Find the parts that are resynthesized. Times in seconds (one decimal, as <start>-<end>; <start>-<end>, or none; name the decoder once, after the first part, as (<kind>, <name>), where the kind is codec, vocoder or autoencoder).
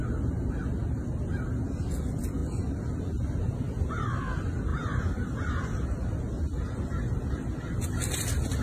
none